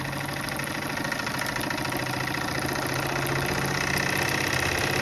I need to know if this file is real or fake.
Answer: real